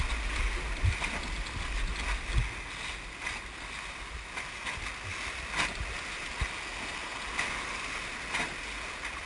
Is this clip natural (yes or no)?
yes